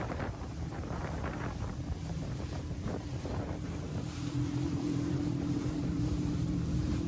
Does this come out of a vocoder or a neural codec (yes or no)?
yes